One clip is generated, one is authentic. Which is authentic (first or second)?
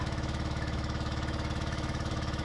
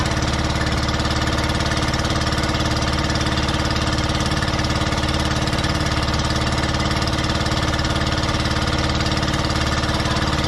second